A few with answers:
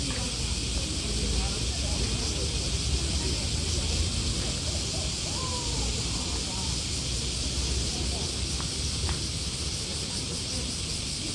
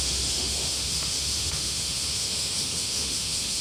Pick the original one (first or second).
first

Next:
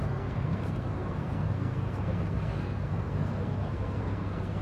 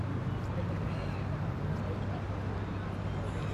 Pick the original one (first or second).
second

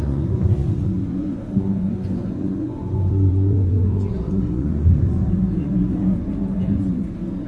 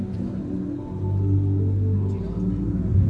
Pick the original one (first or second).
second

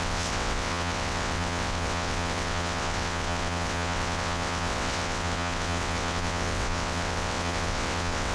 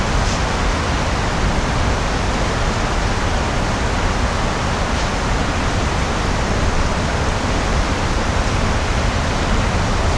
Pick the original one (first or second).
second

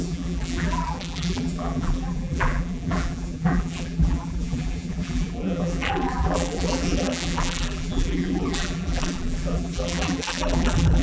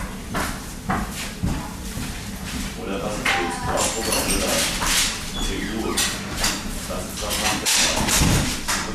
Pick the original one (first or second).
second